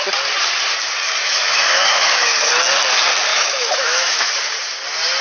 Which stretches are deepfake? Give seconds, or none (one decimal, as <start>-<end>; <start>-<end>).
1.2-2.5; 3.3-4.3